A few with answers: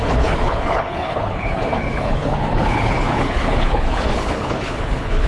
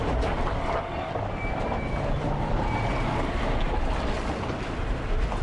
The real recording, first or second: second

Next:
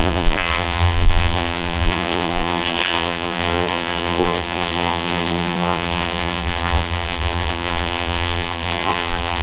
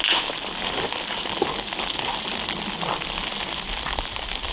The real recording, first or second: second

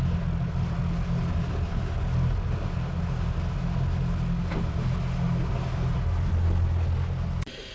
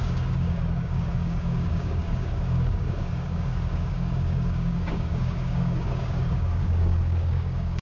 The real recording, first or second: first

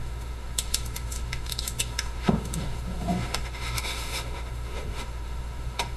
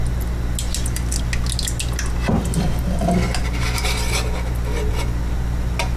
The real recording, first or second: second